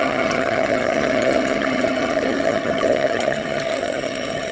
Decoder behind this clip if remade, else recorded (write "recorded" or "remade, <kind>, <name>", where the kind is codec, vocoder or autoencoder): remade, vocoder, HiFi-GAN